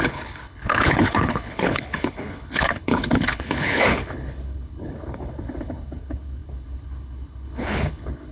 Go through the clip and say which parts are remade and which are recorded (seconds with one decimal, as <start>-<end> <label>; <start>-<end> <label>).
0.0-8.3 remade